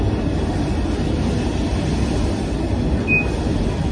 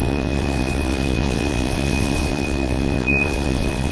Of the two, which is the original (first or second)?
first